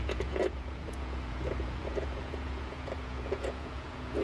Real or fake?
fake